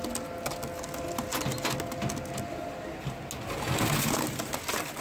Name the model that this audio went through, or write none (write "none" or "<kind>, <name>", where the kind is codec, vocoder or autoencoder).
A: none